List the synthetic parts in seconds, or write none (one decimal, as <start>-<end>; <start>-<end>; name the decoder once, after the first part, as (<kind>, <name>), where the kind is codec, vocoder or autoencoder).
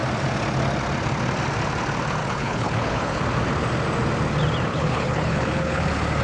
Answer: 2.2-3.2 (codec, HILCodec); 4.7-5.8